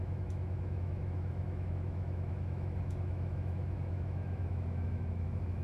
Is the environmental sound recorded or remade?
remade